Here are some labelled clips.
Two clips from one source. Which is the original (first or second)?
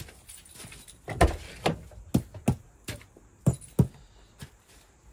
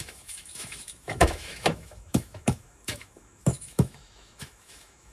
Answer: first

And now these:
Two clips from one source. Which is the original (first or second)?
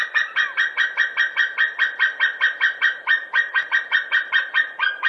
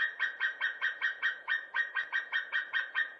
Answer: first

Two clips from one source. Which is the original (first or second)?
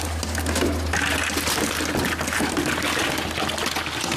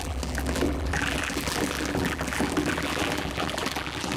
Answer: first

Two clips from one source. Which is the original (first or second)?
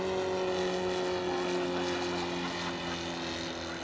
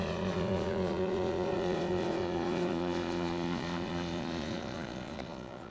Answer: first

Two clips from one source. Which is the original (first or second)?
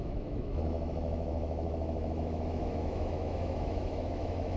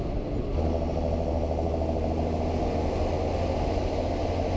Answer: second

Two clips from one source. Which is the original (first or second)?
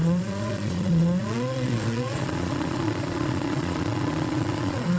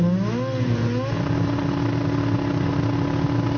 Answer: second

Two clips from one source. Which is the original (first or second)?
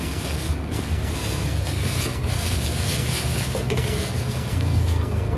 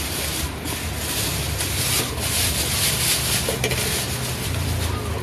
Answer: second